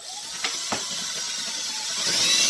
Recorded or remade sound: remade